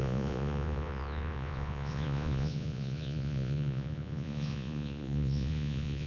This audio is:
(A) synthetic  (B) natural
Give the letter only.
A